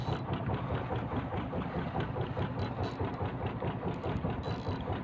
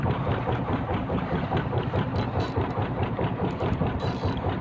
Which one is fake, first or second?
second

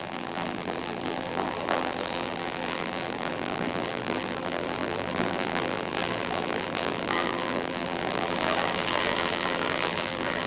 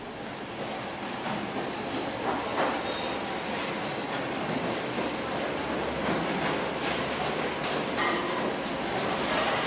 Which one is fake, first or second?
first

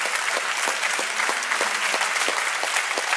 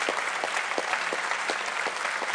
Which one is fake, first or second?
second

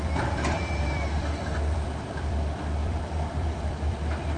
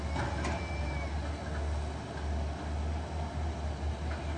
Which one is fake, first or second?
first